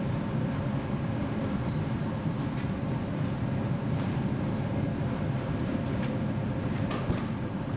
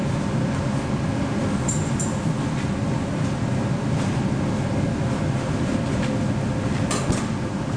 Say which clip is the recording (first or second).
second